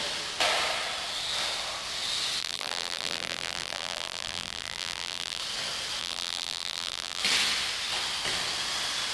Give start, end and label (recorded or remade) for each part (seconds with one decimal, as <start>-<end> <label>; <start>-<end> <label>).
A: 0.0-2.4 recorded; 2.4-5.4 remade; 5.4-6.0 recorded; 6.0-7.2 remade; 7.2-9.1 recorded